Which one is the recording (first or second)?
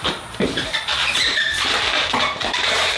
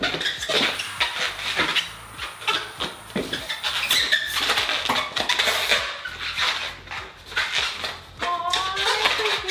second